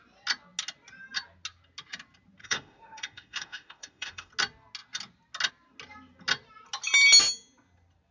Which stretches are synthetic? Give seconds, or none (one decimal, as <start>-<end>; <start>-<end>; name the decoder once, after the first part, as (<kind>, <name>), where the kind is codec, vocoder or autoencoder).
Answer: 2.4-4.3 (autoencoder, DAC-VAE)